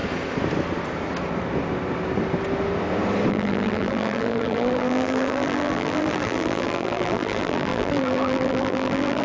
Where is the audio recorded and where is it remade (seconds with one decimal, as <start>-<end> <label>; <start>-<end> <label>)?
0.0-3.3 recorded; 3.3-9.2 remade